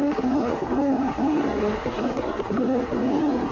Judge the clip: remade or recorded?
remade